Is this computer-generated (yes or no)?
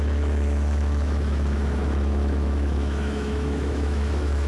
yes